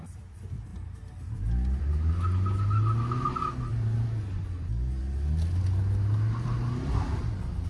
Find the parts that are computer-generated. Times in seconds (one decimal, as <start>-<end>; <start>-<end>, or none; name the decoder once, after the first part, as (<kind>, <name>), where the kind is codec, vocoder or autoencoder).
none